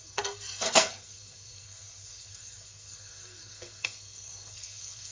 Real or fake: fake